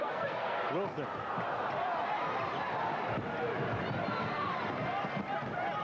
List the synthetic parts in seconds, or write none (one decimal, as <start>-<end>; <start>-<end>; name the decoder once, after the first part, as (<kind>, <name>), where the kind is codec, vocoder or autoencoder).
0.0-0.6 (codec, SNAC); 4.1-4.5